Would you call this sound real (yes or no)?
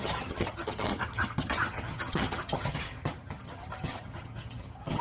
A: no